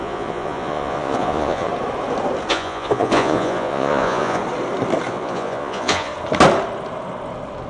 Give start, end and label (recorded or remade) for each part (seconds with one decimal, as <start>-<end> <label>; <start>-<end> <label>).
0.0-1.7 remade; 1.7-2.5 recorded; 2.5-4.4 remade; 4.4-5.1 recorded; 5.1-6.1 remade; 6.1-7.7 recorded